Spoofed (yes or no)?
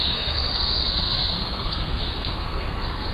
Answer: yes